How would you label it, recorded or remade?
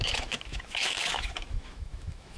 remade